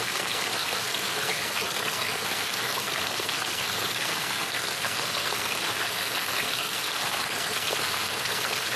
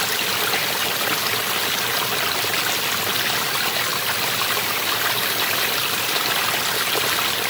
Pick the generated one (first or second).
first